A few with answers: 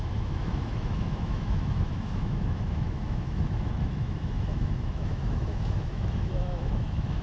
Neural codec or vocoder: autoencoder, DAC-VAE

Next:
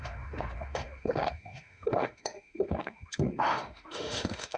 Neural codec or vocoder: autoencoder, DAC-VAE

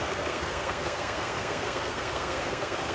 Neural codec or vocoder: codec, SNAC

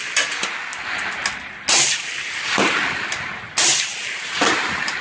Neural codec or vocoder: none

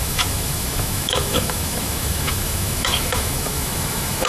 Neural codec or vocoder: autoencoder, DAC-VAE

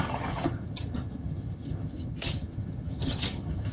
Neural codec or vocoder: vocoder, HiFi-GAN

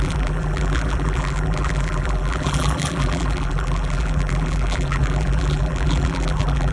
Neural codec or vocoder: vocoder, BigVGAN v2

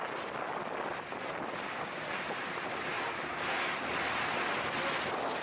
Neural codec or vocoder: none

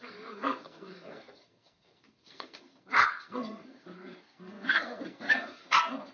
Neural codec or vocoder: codec, SNAC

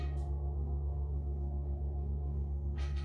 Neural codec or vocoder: codec, SNAC